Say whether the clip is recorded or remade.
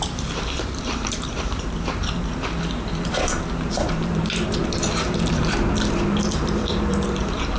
remade